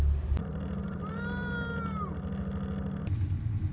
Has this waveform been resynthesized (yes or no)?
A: no